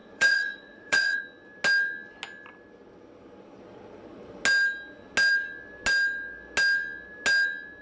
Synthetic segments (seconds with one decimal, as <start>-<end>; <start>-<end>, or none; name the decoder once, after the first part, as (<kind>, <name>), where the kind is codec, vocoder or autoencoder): 0.0-1.2 (vocoder, Vocos)